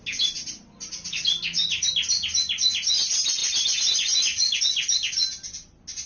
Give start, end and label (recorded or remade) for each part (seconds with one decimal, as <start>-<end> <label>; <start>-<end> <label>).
0.0-6.1 recorded